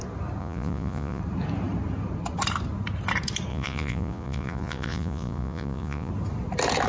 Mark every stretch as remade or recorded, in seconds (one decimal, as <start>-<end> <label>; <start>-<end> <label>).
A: 0.0-0.4 recorded; 0.4-1.2 remade; 1.2-3.5 recorded; 3.5-6.1 remade; 6.1-6.9 recorded